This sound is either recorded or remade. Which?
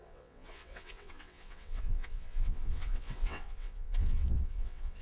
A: remade